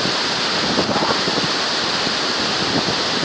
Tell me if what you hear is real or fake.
real